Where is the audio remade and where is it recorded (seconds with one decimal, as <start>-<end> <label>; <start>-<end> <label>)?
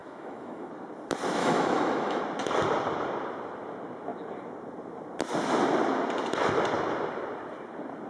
0.0-0.7 remade; 0.7-1.4 recorded; 1.4-2.2 remade; 2.2-8.1 recorded